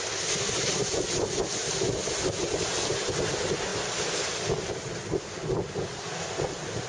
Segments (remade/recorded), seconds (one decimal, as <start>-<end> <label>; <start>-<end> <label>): 0.0-6.9 recorded